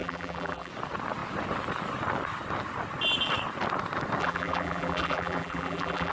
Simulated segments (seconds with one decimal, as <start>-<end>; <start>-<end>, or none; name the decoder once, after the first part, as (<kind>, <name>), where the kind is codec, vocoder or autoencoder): 0.0-0.7 (vocoder, BigVGAN v2); 4.2-6.1